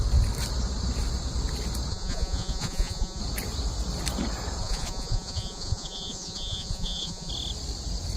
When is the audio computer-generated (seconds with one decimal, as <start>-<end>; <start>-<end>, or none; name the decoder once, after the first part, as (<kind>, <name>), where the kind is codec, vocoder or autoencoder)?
1.9-3.2 (vocoder, Vocos); 4.6-7.3